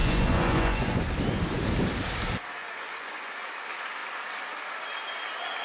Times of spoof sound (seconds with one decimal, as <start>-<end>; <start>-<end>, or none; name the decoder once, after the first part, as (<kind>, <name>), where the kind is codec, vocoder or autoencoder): 0.0-1.0 (vocoder, Vocos); 2.6-3.5